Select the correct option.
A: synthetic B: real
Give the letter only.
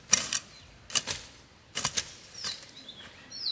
B